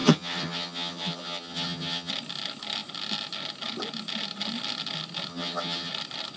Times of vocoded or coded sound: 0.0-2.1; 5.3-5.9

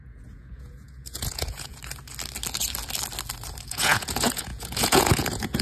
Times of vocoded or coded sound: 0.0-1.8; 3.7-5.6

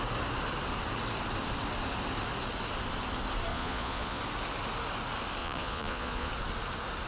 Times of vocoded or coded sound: 3.5-4.2; 5.4-6.3

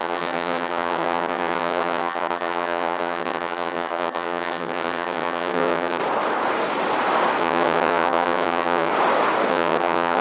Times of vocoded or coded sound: 0.0-6.0; 7.4-8.9; 9.5-10.2

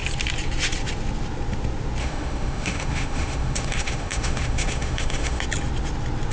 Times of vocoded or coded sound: 2.0-5.4

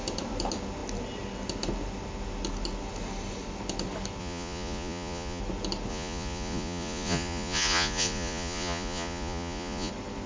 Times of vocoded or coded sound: 4.2-5.4; 5.9-9.9

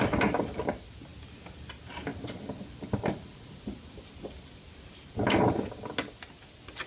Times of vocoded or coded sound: none